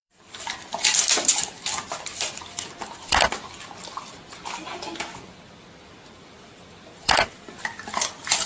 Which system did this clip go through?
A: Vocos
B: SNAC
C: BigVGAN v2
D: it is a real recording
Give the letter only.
C